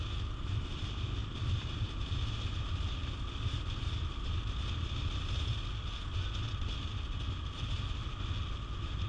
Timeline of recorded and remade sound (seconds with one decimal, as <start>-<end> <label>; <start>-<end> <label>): 0.0-9.1 recorded